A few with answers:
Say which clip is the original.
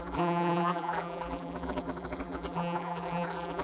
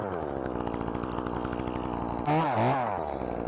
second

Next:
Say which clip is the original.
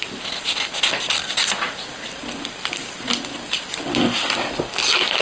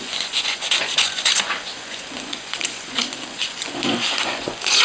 first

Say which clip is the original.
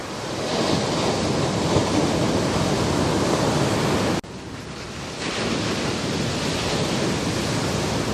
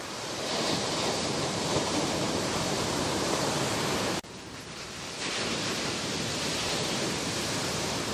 first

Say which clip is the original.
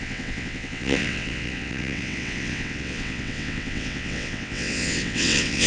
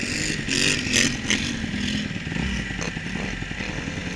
second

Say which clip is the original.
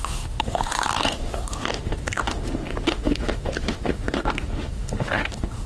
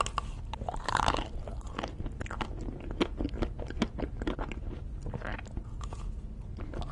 second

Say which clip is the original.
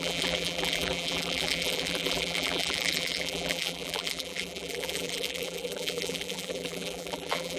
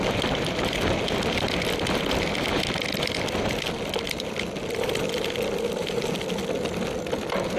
second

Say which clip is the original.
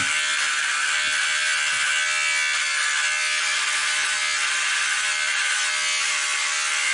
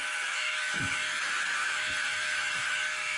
first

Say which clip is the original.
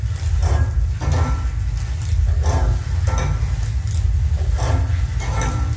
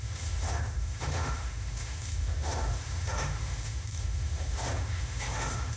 first